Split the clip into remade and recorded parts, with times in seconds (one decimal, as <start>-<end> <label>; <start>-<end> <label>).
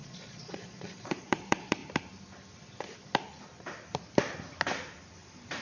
0.0-1.8 remade; 1.8-5.6 recorded